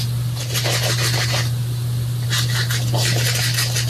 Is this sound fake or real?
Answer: real